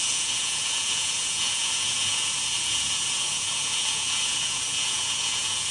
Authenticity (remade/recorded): remade